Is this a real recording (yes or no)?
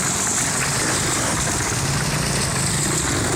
yes